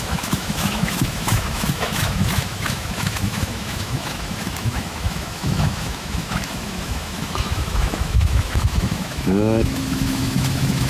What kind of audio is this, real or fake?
fake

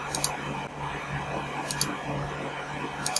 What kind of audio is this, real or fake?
real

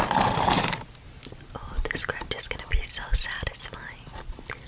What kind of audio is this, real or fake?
real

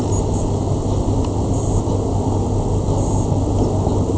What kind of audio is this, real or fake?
real